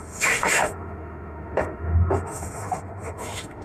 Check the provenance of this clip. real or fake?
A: fake